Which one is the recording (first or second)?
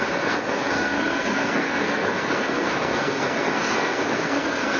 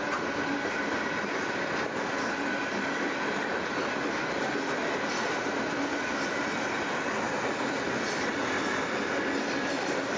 second